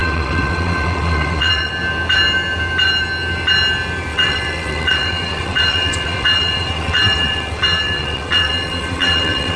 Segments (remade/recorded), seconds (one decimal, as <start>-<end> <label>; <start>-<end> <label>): 0.0-1.7 remade; 1.7-4.1 recorded; 4.1-9.6 remade